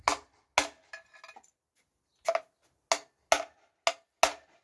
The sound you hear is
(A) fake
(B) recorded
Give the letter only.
B